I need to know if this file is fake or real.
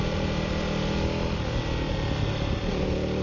real